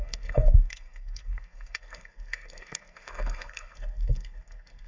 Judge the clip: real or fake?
fake